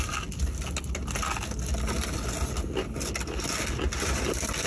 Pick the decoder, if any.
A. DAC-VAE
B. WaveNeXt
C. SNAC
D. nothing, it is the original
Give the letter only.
D